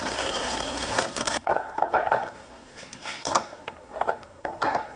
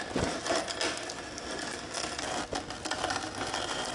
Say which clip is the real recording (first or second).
second